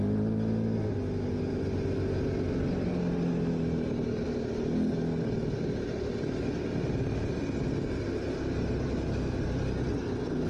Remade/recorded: recorded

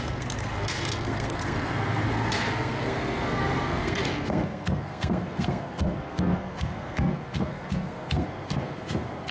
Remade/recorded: remade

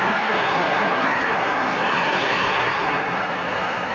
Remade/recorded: remade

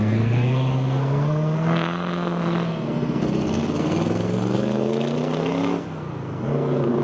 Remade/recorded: remade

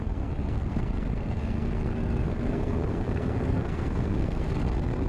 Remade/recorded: remade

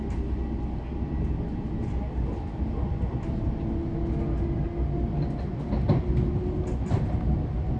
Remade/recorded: recorded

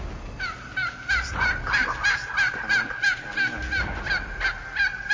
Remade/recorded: recorded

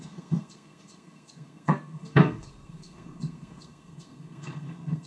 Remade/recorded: remade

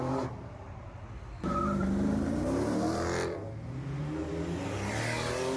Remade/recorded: recorded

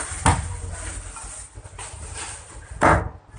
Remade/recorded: recorded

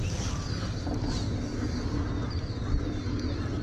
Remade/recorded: recorded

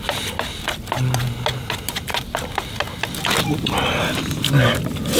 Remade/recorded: recorded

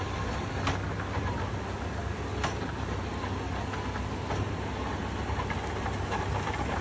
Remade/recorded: recorded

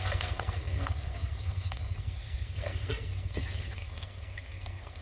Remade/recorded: remade